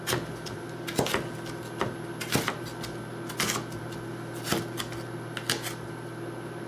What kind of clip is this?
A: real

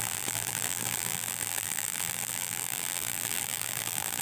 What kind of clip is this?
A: fake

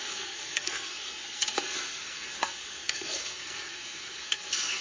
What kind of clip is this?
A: fake